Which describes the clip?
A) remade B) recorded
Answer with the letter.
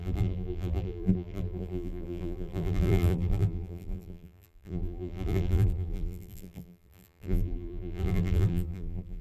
A